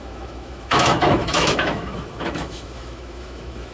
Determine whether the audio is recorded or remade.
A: remade